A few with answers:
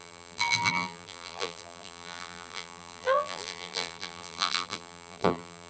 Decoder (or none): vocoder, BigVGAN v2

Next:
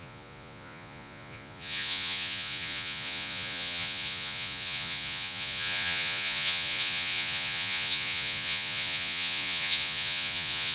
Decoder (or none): vocoder, Vocos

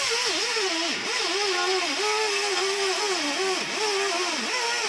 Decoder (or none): none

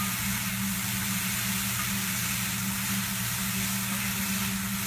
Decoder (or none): none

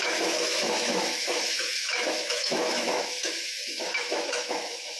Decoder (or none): autoencoder, DAC-VAE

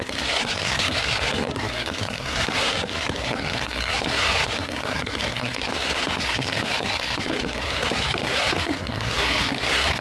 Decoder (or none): codec, SNAC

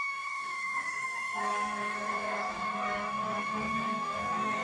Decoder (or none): codec, DAC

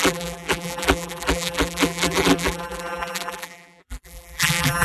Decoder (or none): vocoder, BigVGAN v2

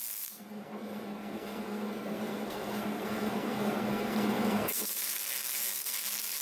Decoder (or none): codec, SNAC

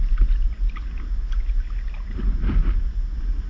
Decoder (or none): none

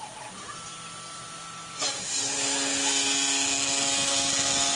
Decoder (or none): none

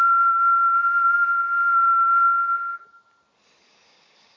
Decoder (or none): none